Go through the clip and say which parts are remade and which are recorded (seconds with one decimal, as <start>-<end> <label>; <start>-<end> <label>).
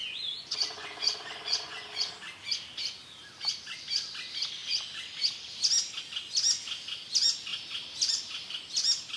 0.0-2.1 remade; 2.1-9.2 recorded